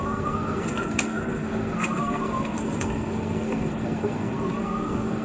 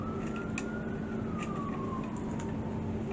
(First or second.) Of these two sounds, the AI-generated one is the first